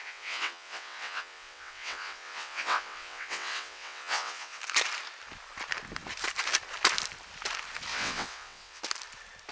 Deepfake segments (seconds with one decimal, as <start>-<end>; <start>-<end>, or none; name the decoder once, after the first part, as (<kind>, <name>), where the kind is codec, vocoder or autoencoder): 0.0-4.6 (vocoder, WaveNeXt); 7.9-8.8